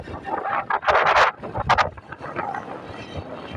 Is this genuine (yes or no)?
yes